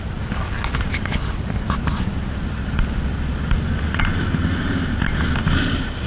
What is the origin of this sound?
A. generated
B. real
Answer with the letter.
B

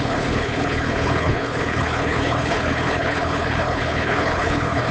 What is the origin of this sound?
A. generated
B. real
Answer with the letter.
A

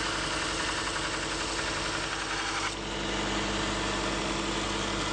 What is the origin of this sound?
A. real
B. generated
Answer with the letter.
A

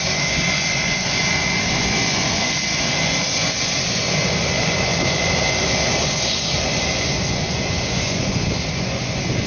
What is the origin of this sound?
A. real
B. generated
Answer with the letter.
B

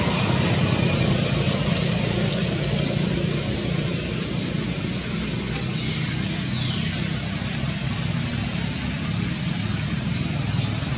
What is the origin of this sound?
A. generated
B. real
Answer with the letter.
B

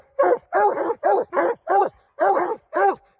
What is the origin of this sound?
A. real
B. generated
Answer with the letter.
B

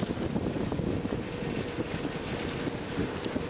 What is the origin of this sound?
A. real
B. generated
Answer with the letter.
A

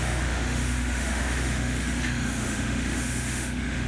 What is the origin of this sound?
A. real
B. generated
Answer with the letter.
B